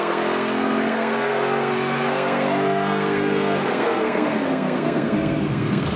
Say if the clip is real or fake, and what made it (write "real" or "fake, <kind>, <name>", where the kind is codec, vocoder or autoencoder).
fake, codec, SNAC